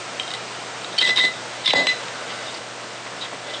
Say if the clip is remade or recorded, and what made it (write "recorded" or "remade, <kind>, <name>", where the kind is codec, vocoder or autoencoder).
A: recorded